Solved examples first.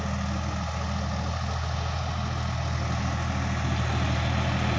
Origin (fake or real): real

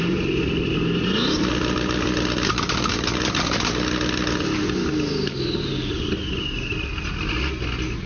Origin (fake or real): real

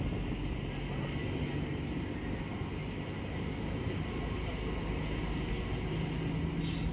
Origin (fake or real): real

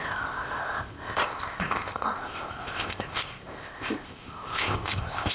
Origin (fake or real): fake